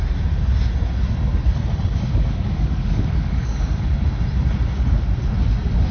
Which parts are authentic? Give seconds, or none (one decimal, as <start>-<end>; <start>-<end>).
0.0-1.9; 3.9-5.9